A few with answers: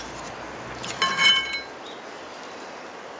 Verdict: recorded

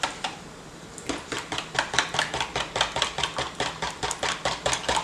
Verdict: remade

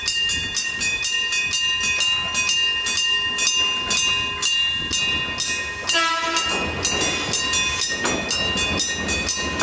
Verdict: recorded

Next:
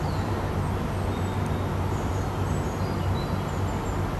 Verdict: recorded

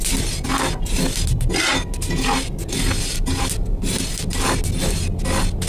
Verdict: recorded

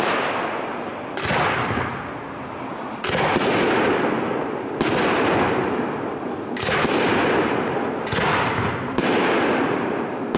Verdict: recorded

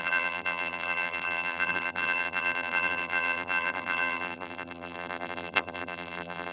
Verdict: remade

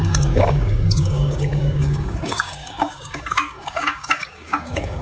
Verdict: remade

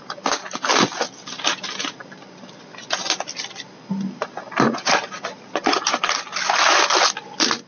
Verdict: recorded